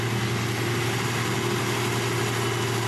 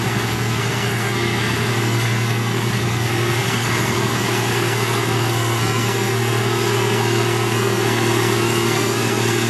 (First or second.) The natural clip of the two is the first